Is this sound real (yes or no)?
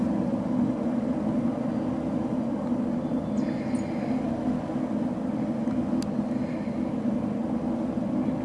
yes